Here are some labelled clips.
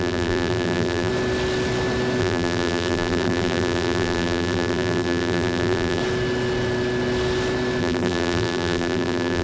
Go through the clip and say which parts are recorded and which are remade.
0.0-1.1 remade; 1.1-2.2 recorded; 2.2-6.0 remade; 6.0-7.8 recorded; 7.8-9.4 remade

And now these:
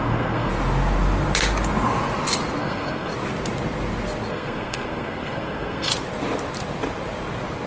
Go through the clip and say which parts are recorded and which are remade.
0.0-0.5 remade; 0.5-2.6 recorded; 2.6-3.1 remade; 3.1-4.3 recorded; 4.3-5.9 remade; 5.9-7.7 recorded

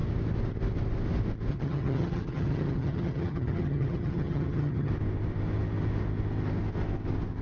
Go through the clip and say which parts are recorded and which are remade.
0.0-1.5 recorded; 1.5-4.9 remade; 4.9-7.4 recorded

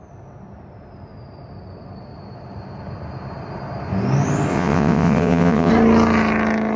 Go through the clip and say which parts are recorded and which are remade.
0.0-4.5 recorded; 4.5-5.7 remade; 5.7-6.8 recorded

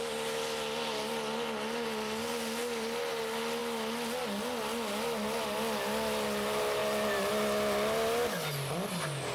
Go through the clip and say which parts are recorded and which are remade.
0.0-9.3 recorded

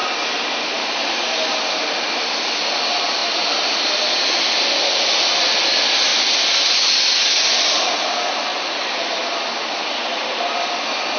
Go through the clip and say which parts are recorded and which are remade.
0.0-11.2 recorded

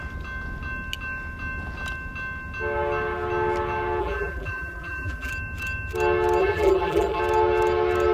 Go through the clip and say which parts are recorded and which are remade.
0.0-4.0 recorded; 4.0-5.3 remade; 5.3-6.4 recorded; 6.4-7.2 remade; 7.2-8.1 recorded

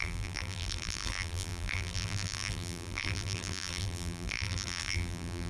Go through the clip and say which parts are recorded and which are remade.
0.0-5.5 remade